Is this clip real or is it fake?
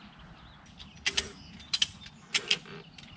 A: real